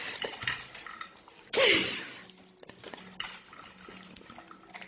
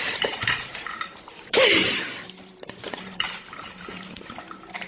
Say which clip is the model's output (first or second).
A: second